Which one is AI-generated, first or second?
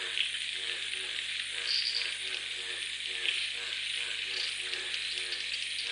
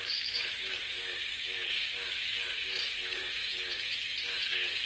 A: second